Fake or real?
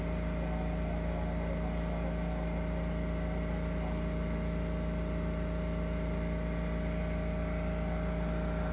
real